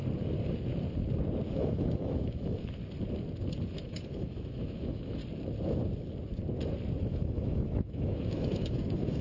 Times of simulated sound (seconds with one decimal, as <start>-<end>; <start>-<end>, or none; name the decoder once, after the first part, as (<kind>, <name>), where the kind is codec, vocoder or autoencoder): 1.5-2.8 (autoencoder, DAC-VAE); 3.7-5.2; 7.0-9.2